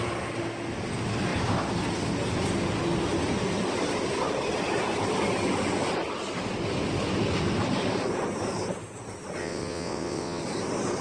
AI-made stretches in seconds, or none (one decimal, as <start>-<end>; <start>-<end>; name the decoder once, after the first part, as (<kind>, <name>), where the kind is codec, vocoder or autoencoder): 9.4-10.4 (vocoder, WaveNeXt)